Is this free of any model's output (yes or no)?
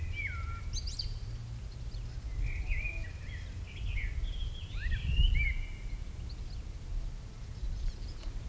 yes